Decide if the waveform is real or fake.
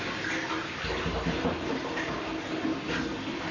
real